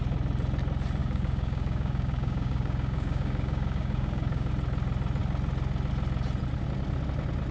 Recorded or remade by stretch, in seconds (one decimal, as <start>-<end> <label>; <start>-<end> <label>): 0.0-1.0 recorded; 1.0-4.5 remade; 4.5-7.5 recorded